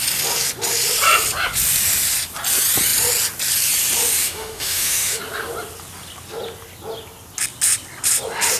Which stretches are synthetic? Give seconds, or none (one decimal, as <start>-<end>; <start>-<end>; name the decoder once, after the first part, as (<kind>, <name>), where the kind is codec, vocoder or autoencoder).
4.2-5.2 (autoencoder, DAC-VAE)